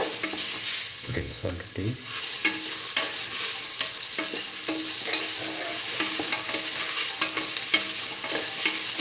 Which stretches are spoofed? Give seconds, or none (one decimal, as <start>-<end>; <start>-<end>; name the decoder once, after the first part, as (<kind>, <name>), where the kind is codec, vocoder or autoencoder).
0.9-1.5 (vocoder, Vocos)